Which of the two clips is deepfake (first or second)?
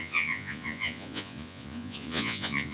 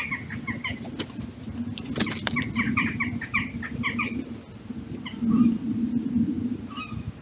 first